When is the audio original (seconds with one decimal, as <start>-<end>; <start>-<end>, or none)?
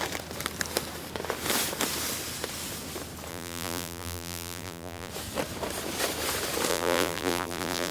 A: 0.0-3.3; 5.1-6.7